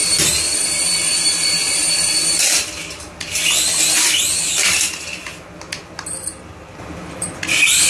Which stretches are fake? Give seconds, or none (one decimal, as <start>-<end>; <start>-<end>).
none